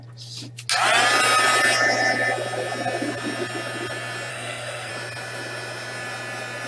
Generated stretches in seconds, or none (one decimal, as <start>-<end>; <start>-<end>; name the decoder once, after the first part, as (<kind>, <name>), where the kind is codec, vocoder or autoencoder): 4.3-4.9 (codec, SNAC)